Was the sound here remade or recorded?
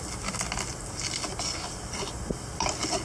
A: recorded